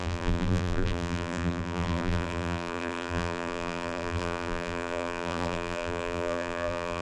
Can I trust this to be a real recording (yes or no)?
no